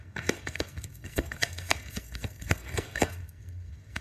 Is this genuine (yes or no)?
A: no